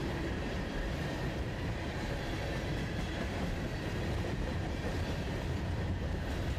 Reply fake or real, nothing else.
fake